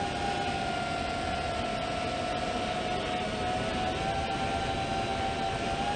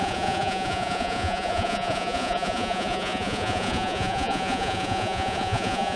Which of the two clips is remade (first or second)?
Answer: second